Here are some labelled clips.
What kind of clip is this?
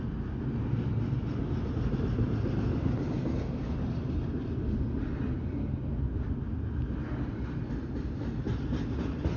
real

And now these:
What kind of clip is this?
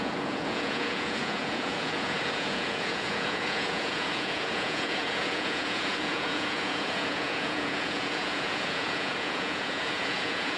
fake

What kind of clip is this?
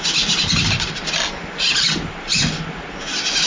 real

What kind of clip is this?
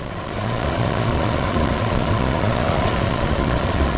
fake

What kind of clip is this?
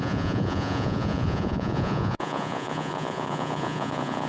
fake